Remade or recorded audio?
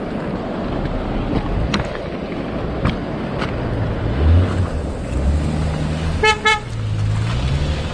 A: recorded